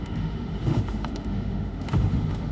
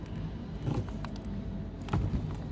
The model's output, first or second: first